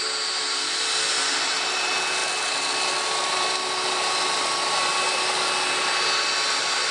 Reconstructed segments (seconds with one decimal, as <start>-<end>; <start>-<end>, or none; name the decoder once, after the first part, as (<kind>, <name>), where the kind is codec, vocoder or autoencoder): none